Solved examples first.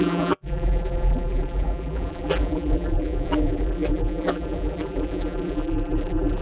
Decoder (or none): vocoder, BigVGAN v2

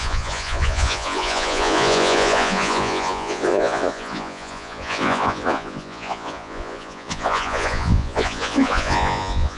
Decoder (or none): vocoder, Vocos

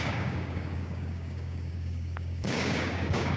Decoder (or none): codec, DAC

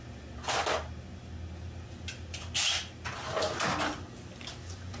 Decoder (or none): none